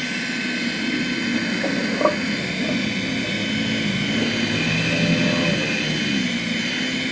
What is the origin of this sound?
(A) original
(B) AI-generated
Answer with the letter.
A